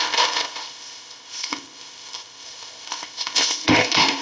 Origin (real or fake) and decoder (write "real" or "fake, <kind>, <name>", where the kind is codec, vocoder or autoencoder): fake, codec, ZipCodec